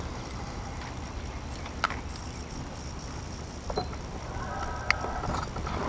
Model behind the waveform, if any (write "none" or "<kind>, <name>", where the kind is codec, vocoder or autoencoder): none